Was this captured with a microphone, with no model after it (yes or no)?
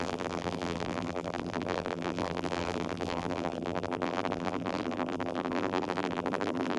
no